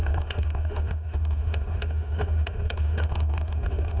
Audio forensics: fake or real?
fake